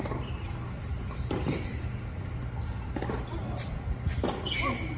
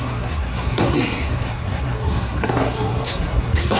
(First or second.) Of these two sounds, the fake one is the second